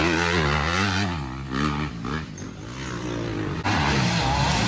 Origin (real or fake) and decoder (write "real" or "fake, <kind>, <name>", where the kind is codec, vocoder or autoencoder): real